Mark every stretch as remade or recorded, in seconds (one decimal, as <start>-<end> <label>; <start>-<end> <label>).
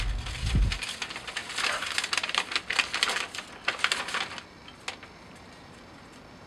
0.0-6.5 recorded